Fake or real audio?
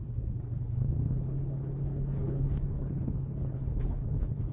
fake